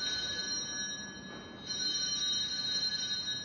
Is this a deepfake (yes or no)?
no